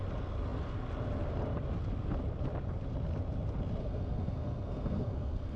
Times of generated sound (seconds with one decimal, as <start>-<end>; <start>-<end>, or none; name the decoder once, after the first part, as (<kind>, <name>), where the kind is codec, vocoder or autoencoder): 3.8-5.6 (codec, SNAC)